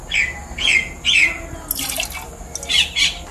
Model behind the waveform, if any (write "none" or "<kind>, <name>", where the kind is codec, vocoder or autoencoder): none